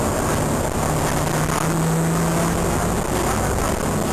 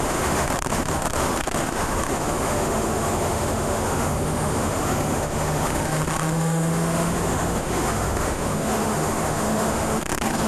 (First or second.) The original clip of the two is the first